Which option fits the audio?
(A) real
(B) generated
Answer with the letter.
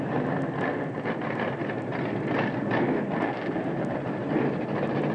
A